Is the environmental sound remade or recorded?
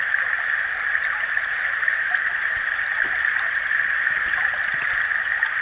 recorded